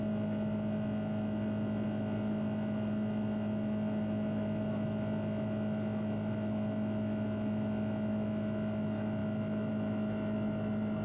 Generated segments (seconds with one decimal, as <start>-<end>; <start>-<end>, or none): none